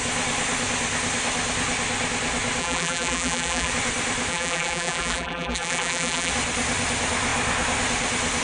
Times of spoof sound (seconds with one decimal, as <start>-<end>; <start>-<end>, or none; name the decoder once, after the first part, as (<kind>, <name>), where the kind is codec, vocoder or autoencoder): 2.6-3.7 (vocoder, BigVGAN v2); 4.3-6.3